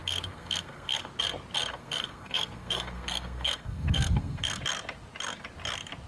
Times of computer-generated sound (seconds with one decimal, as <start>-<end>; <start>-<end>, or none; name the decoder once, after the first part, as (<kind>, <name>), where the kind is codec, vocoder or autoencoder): 0.0-1.1 (codec, SNAC); 1.7-4.6

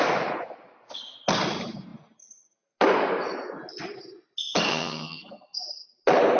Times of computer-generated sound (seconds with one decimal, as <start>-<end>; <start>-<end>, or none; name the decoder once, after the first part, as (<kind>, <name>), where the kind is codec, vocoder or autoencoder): 4.7-5.2 (vocoder, HiFi-GAN)

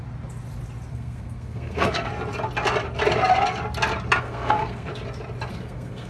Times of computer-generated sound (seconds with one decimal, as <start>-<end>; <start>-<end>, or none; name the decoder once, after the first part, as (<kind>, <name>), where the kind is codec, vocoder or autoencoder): 0.9-2.1 (codec, SNAC); 4.2-4.9; 5.5-6.1

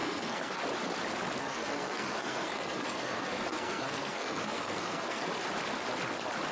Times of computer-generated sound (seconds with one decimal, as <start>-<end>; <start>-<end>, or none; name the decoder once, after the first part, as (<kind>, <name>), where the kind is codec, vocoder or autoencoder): 0.0-0.6 (codec, SNAC); 1.4-5.3

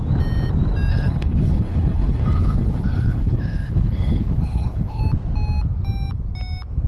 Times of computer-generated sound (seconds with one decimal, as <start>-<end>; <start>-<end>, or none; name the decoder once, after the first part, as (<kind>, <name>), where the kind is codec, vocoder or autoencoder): 0.9-5.0 (codec, HILCodec)

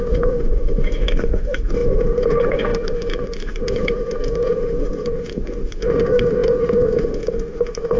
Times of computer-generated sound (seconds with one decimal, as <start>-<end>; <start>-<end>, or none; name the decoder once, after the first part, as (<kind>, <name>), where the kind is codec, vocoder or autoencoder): 0.0-8.0 (autoencoder, DAC-VAE)

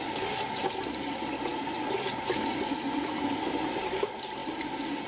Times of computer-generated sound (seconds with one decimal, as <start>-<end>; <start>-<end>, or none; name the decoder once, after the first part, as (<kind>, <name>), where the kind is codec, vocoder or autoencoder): none